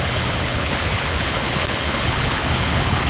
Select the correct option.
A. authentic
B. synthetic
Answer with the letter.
B